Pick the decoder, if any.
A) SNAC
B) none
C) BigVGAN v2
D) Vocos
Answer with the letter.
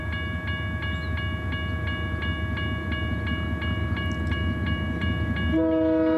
B